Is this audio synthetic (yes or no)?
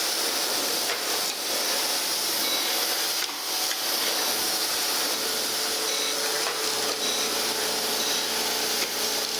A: no